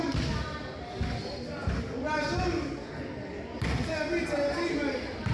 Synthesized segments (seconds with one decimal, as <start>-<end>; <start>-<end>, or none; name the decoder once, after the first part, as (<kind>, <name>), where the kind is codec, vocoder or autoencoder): none